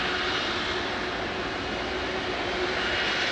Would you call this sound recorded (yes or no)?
yes